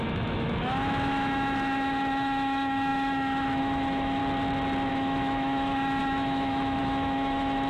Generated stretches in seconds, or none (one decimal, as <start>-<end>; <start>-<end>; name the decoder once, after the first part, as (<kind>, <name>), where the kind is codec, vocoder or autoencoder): 0.0-4.2 (autoencoder, DAC-VAE); 4.9-7.7

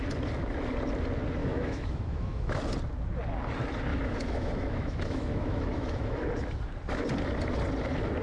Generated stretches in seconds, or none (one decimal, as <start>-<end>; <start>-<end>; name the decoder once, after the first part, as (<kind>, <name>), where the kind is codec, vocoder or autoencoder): 1.4-2.6 (autoencoder, DAC-VAE); 3.9-6.3

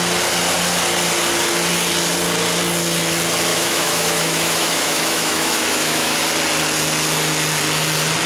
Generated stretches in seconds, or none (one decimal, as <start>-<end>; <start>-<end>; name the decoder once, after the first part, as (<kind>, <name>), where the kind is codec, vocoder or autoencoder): 3.5-6.2 (autoencoder, DAC-VAE)

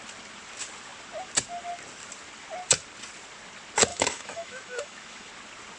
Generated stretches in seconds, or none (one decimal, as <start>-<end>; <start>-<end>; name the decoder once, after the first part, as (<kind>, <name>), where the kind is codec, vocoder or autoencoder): 3.9-5.3 (autoencoder, DAC-VAE)

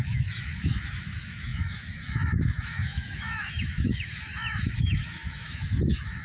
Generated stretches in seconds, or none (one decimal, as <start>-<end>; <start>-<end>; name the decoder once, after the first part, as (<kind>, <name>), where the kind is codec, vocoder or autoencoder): 0.0-6.2 (autoencoder, DAC-VAE)